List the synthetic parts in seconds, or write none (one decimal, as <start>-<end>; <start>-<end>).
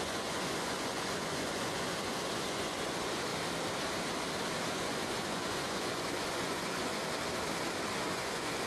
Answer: 0.0-3.3; 4.7-7.0; 8.1-8.7